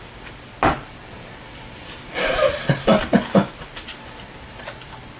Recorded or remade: remade